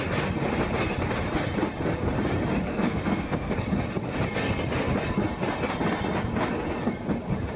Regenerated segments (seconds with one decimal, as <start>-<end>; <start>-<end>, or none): 2.7-3.5